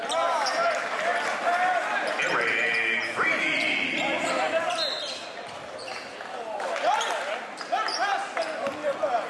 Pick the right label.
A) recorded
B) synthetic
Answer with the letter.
A